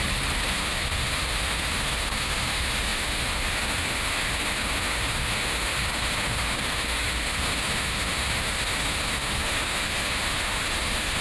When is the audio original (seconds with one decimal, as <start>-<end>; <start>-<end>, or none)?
0.0-0.5